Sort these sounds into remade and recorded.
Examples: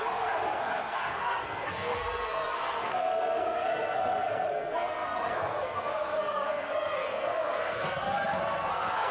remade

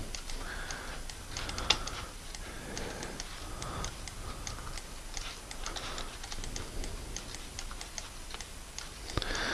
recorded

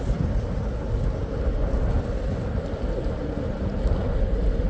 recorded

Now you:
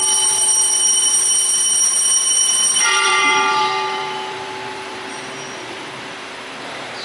remade